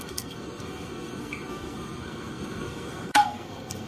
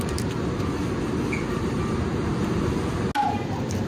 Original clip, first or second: second